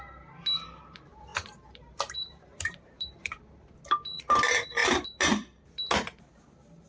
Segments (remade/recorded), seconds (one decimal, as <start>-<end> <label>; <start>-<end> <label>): 0.0-1.3 recorded; 1.3-3.7 remade; 3.7-6.9 recorded